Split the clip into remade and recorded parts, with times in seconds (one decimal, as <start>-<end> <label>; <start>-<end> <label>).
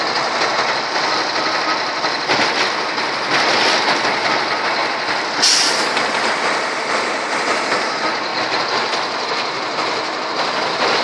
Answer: 0.0-11.0 recorded